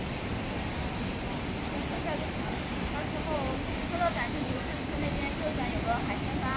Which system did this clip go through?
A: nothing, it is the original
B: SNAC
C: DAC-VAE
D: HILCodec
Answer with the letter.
A